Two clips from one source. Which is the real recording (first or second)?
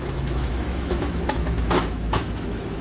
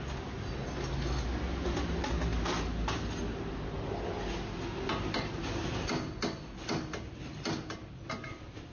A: second